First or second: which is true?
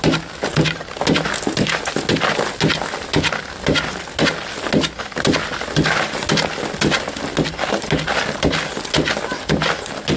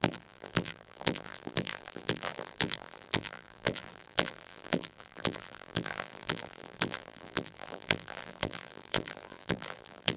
first